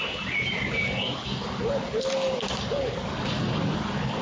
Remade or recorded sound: recorded